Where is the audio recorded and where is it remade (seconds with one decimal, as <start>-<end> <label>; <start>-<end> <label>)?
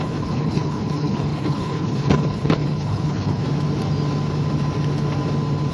0.0-3.4 remade; 3.4-5.7 recorded